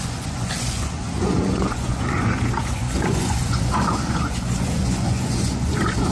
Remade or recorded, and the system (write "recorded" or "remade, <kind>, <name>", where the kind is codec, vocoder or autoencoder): remade, vocoder, Vocos